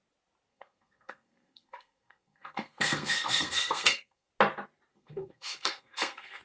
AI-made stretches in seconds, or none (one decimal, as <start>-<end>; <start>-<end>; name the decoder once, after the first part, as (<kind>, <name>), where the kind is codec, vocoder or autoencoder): 0.5-4.3 (codec, SNAC); 4.9-6.4